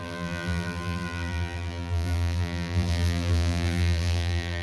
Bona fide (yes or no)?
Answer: no